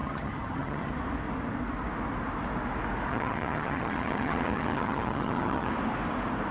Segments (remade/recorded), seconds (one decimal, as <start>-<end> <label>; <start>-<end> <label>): 0.0-0.9 remade; 0.9-3.1 recorded; 3.1-5.7 remade; 5.7-6.5 recorded